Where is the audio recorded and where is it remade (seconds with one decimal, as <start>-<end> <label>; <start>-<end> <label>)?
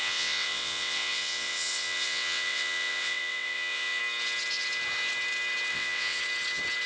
0.0-4.0 remade; 4.0-5.7 recorded; 5.7-6.2 remade; 6.2-6.9 recorded